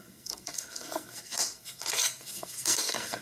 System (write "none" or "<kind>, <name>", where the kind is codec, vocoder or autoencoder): codec, SNAC